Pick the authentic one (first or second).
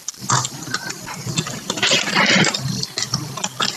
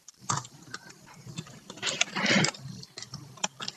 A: first